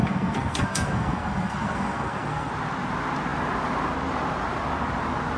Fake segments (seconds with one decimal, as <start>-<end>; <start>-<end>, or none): 0.0-2.5